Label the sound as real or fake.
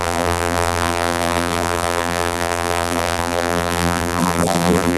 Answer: fake